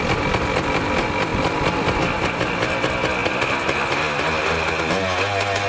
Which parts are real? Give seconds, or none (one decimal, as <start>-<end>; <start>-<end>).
0.0-5.7